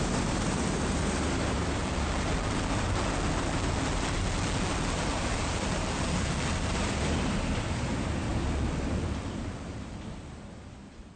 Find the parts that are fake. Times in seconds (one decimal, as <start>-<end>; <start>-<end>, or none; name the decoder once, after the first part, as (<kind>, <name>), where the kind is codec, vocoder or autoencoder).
1.8-6.8 (vocoder, BigVGAN v2); 8.3-10.2